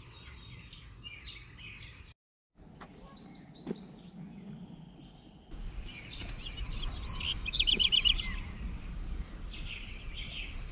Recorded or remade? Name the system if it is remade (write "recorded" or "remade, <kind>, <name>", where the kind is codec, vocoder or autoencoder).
recorded